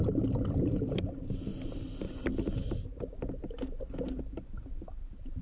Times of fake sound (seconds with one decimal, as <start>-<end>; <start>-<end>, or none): none